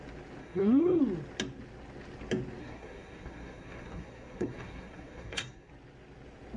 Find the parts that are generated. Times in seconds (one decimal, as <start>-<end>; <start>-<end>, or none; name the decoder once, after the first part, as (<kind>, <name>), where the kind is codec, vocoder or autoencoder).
0.4-1.0 (codec, SNAC); 2.6-5.7